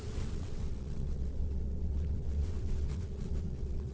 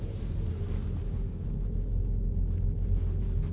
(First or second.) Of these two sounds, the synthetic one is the first